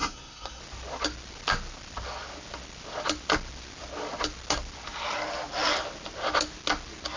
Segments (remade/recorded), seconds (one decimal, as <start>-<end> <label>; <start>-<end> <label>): 0.0-0.6 remade; 0.6-7.2 recorded